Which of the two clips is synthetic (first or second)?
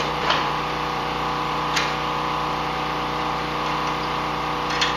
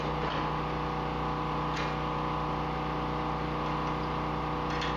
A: first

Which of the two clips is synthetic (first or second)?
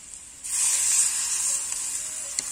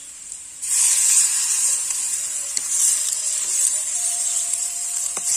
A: second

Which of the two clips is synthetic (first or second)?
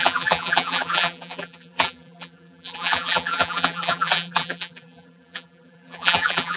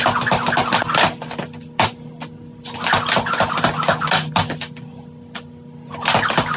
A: first